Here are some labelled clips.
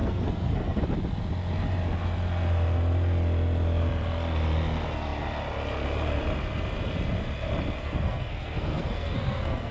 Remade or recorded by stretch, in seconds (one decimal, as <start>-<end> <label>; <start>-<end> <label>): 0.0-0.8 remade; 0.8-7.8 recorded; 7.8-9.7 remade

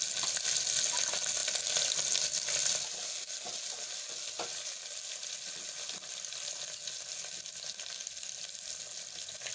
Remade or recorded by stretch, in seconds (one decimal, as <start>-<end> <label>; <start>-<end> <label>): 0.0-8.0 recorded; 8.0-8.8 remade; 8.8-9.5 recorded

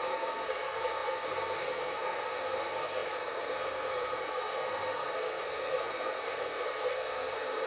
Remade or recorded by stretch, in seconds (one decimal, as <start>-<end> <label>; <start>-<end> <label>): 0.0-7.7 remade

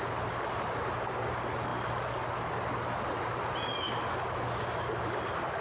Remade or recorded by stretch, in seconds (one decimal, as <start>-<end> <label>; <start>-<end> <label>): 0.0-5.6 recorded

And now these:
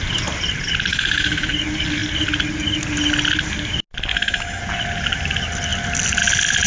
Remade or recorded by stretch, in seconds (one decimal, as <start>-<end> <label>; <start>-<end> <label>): 0.0-0.9 recorded; 0.9-1.5 remade; 1.5-4.1 recorded; 4.1-4.6 remade; 4.6-6.7 recorded

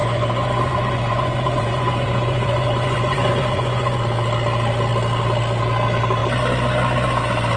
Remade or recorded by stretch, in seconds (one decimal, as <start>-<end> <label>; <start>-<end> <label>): 0.0-4.0 remade; 4.0-7.6 recorded

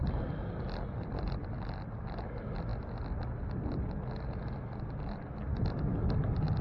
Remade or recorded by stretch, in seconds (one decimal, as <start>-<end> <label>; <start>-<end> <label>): 0.0-6.6 recorded